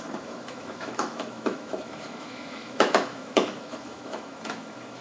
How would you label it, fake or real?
fake